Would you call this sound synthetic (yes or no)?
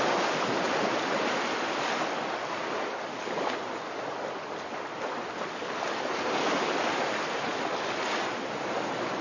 no